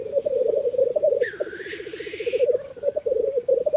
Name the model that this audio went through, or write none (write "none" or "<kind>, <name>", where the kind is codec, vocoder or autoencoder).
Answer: vocoder, BigVGAN v2